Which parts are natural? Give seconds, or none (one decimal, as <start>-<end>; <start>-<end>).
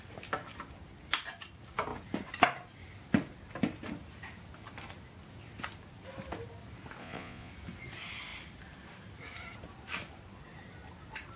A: 0.0-7.0; 7.5-11.4